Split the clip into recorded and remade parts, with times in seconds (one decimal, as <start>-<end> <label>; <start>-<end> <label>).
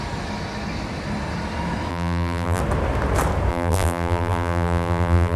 0.0-1.9 recorded; 1.9-2.6 remade; 2.6-3.5 recorded; 3.5-5.4 remade